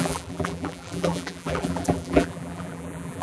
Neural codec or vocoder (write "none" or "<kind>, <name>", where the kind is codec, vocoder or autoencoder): vocoder, BigVGAN v2